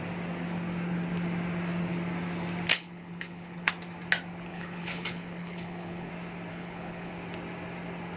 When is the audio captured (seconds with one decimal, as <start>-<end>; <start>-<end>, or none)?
0.0-2.7; 3.7-4.5; 6.1-6.5; 7.1-8.2